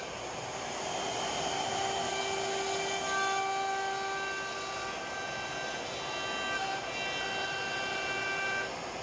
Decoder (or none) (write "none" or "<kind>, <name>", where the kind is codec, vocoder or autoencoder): none